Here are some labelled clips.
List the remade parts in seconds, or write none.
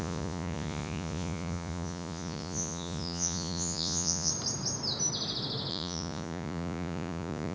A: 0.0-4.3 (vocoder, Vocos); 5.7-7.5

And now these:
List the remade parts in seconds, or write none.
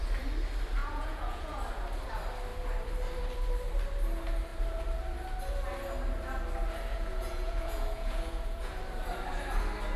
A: 0.8-1.6 (vocoder, Vocos); 6.9-8.8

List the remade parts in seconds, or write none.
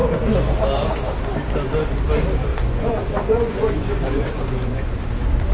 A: 2.5-5.0 (vocoder, Vocos)